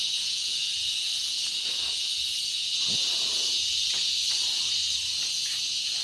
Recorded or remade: remade